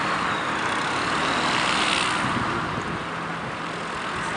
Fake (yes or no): no